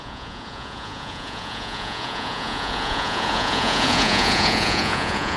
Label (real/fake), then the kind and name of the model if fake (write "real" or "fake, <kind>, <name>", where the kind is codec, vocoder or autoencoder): fake, vocoder, Vocos